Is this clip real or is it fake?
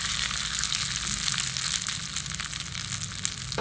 real